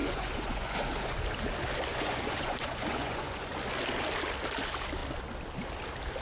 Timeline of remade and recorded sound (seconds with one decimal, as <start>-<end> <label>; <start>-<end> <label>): 0.0-1.1 remade; 1.1-1.9 recorded; 1.9-3.5 remade; 3.5-6.2 recorded